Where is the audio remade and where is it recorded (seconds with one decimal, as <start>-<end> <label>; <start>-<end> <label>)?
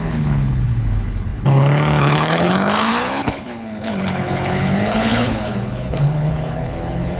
0.0-7.2 remade